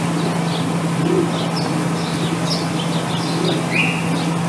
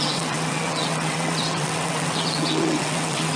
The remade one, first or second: second